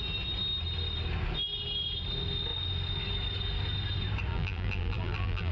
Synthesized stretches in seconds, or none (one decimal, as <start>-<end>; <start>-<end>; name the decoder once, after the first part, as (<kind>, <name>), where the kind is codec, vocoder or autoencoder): 4.3-5.5 (vocoder, BigVGAN v2)